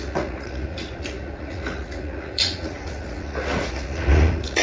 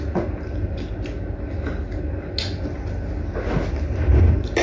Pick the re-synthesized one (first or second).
first